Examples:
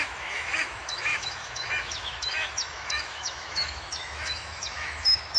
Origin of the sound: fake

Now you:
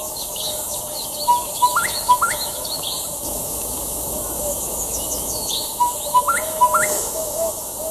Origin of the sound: fake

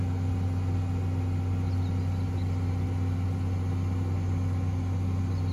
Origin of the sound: real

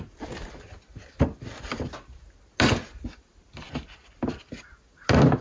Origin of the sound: real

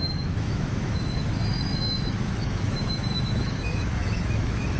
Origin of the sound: fake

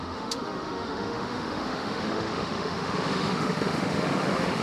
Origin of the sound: fake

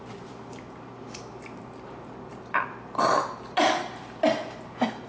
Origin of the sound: real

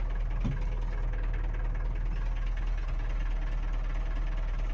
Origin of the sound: real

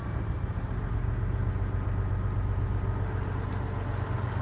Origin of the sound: real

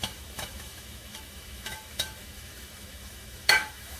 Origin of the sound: fake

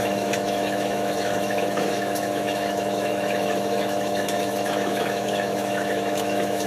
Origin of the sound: fake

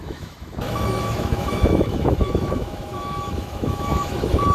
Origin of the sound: fake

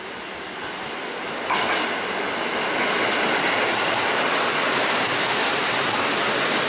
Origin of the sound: real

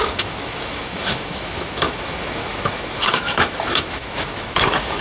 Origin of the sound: fake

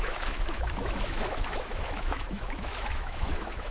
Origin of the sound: fake